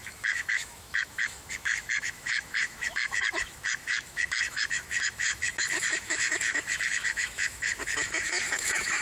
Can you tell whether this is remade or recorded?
remade